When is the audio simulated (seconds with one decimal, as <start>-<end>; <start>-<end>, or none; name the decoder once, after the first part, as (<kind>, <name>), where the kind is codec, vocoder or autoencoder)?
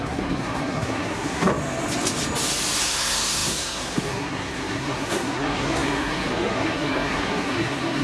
0.0-1.5 (codec, SNAC); 2.8-8.0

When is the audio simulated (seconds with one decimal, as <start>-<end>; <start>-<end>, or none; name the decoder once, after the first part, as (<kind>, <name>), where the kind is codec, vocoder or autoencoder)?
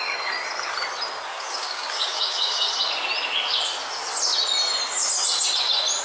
1.3-2.7 (codec, DAC)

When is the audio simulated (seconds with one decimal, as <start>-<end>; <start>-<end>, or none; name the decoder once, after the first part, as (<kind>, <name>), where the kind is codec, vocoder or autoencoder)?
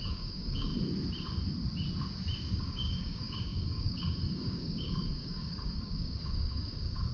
0.0-0.7 (codec, DAC); 2.5-7.1